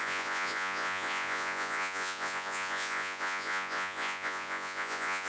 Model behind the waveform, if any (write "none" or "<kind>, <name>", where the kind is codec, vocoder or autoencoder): vocoder, Vocos